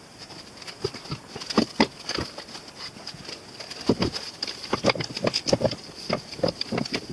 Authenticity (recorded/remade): recorded